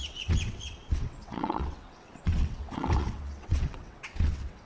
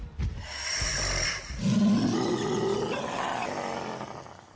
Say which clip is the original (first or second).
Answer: second